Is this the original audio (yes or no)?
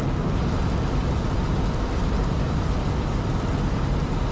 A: no